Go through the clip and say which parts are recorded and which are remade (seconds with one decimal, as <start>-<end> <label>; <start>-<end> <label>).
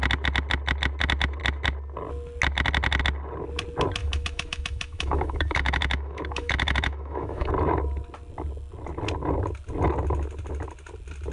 0.0-4.0 recorded; 4.0-7.5 remade; 7.5-11.3 recorded